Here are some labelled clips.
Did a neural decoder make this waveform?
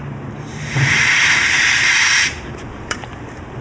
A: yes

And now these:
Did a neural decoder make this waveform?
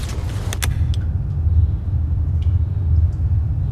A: no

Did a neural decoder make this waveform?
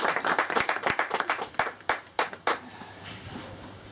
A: yes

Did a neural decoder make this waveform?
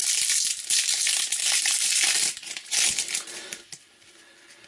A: no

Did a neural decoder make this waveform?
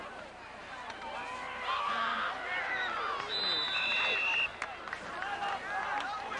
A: no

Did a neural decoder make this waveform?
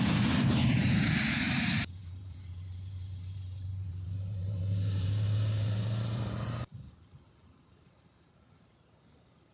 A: yes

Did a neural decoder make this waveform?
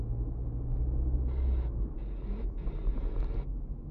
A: no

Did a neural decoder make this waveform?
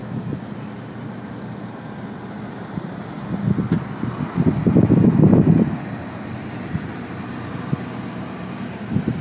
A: no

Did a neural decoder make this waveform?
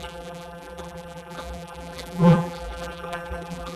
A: yes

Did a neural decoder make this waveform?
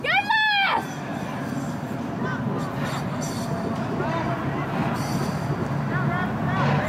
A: no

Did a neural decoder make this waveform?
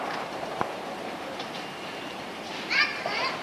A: yes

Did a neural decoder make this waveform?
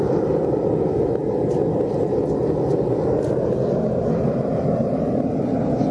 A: no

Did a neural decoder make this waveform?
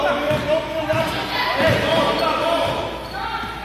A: no